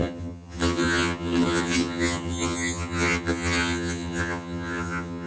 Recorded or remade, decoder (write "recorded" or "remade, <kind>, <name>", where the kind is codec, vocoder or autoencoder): remade, vocoder, HiFi-GAN